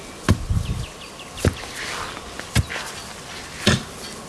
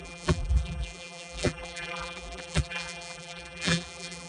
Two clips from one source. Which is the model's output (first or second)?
second